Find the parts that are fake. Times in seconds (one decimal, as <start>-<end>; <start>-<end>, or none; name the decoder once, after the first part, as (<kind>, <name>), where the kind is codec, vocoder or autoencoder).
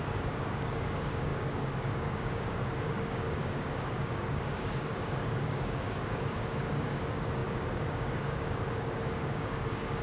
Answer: 0.0-10.0 (codec, DAC)